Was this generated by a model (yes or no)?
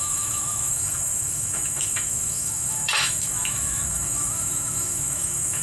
yes